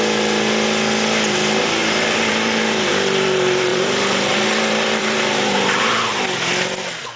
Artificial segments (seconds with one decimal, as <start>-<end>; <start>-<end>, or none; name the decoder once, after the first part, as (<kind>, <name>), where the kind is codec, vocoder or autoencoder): 1.8-2.9 (vocoder, BigVGAN v2); 3.7-5.8

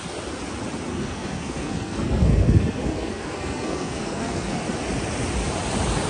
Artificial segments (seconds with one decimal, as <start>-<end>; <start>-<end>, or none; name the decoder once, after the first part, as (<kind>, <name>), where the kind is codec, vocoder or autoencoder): 0.9-4.6 (codec, SNAC)

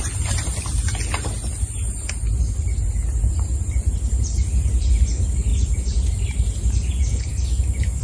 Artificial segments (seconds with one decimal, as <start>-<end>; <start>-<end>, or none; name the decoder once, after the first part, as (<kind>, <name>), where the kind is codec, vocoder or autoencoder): none

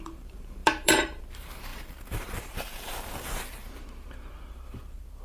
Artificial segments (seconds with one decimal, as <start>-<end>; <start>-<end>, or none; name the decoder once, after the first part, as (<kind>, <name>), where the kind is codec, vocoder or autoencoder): 0.0-5.2 (vocoder, BigVGAN v2)

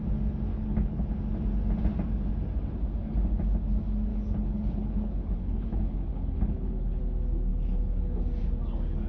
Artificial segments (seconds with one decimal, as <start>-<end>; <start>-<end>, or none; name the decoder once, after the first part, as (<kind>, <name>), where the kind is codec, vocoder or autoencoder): 0.5-1.1 (codec, HILCodec); 4.1-7.0; 7.5-8.2